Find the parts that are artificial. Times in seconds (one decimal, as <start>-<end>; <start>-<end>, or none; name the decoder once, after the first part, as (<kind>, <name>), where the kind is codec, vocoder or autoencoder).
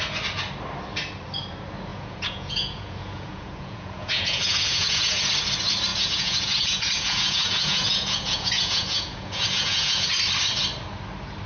1.9-5.3 (vocoder, Vocos); 5.9-10.1